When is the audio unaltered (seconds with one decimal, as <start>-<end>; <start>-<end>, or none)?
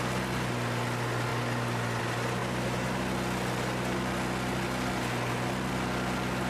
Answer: 0.0-6.5